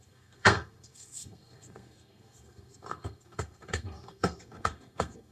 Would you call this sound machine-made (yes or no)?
yes